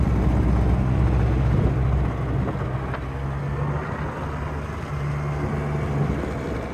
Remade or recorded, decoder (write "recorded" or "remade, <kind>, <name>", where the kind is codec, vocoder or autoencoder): recorded